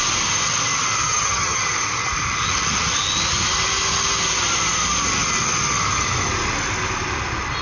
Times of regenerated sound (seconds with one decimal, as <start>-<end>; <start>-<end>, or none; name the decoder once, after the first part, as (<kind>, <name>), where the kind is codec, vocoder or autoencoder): 1.0-1.6 (vocoder, HiFi-GAN)